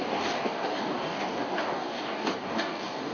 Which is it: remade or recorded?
remade